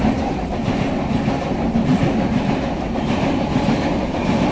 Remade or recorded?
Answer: recorded